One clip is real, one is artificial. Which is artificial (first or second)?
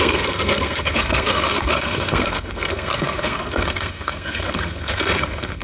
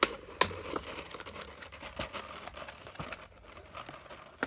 first